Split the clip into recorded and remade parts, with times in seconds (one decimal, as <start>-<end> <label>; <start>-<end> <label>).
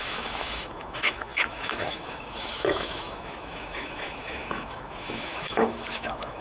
0.0-6.4 remade